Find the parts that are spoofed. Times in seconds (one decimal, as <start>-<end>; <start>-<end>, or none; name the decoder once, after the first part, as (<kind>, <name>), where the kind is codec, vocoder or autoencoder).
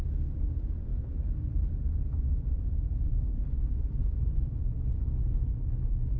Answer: 0.9-3.6 (vocoder, BigVGAN v2); 4.0-4.6